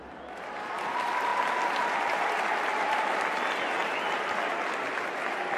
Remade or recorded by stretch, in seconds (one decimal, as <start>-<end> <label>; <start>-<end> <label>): 0.0-5.6 recorded